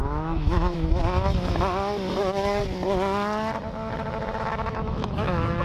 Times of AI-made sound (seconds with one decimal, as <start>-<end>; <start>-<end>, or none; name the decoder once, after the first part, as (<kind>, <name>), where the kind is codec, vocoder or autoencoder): 0.0-1.0 (autoencoder, DAC-VAE); 2.2-2.6; 4.4-5.6